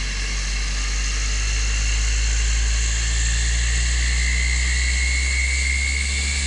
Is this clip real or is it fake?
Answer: real